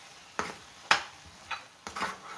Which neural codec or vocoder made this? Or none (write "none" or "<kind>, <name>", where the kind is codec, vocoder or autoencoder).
none